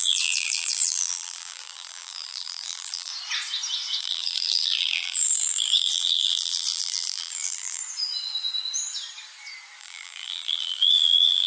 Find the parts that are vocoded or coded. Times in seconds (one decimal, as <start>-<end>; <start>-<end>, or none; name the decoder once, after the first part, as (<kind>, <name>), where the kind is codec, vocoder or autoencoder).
0.0-3.1 (vocoder, BigVGAN v2); 4.0-7.8; 9.8-11.5